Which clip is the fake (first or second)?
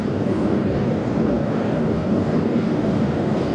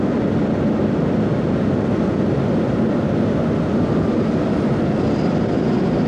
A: first